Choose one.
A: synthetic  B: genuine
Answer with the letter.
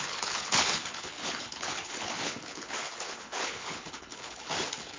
A